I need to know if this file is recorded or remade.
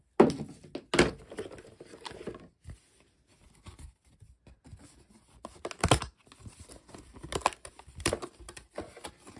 recorded